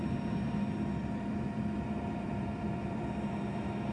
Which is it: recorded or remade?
remade